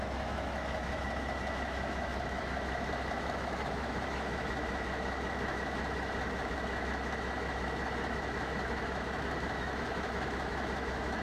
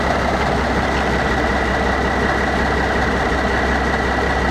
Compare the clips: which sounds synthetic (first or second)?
first